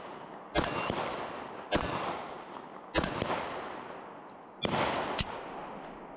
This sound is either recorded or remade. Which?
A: recorded